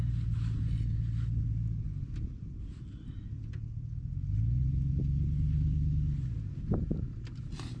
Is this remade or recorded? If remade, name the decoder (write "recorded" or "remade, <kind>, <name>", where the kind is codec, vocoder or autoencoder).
recorded